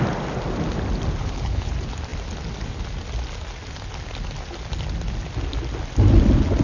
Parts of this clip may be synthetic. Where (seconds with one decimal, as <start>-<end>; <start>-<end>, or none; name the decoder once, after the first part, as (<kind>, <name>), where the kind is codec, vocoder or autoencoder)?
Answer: 1.2-1.7 (codec, HILCodec)